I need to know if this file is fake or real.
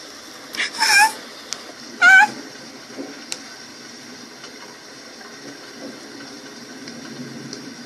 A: real